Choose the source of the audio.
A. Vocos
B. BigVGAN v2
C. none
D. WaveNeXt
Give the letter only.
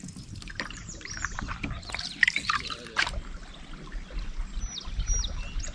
C